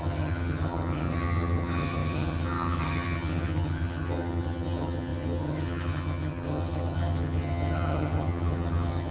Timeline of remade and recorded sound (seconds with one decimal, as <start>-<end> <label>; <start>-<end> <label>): 0.0-9.1 remade